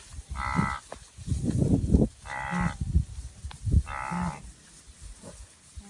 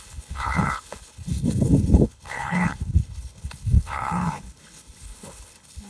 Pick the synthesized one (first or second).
second